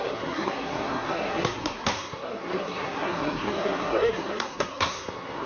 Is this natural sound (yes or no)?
no